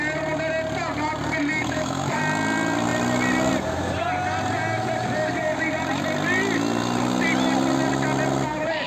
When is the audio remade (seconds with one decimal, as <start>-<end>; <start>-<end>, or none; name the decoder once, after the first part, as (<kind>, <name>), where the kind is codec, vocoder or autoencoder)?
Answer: 1.6-2.2 (autoencoder, DAC-VAE)